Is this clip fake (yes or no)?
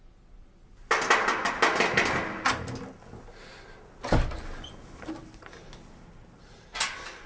no